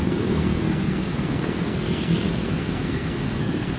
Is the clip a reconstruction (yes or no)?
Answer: yes